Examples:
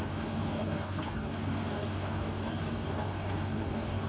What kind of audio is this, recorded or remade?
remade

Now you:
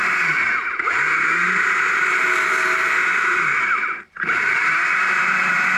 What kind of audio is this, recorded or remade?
remade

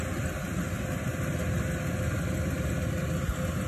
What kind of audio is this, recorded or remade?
recorded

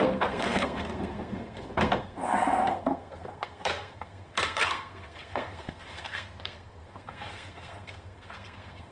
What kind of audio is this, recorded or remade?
remade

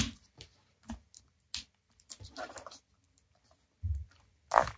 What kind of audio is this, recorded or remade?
recorded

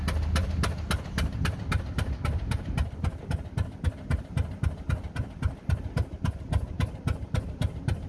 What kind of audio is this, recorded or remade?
recorded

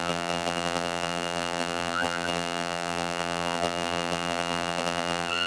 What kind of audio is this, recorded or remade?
remade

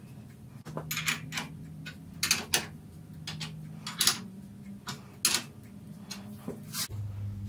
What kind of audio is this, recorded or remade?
recorded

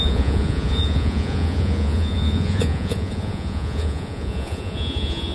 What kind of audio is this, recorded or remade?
remade